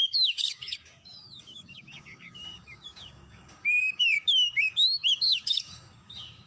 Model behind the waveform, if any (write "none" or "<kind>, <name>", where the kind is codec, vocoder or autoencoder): codec, DAC